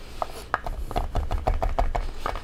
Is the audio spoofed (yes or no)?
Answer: no